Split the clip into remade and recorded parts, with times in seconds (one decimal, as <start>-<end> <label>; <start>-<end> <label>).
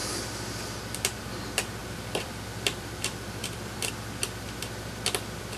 0.0-1.8 recorded; 1.8-3.9 remade; 3.9-5.6 recorded